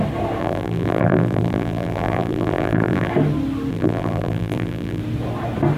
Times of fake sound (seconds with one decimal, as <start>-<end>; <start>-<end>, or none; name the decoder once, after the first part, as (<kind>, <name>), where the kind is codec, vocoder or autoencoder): 0.4-3.1 (vocoder, BigVGAN v2); 3.7-5.0